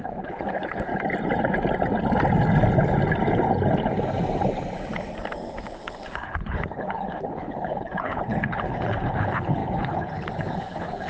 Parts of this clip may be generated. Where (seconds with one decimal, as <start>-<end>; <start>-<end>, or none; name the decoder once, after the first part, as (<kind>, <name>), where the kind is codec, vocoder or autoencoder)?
0.0-0.9 (codec, HILCodec); 5.5-11.1